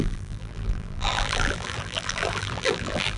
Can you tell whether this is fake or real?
fake